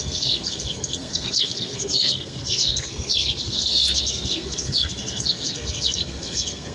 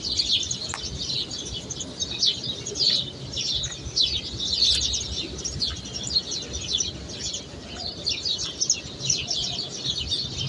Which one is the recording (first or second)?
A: second